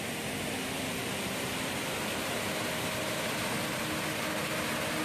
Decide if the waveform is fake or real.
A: real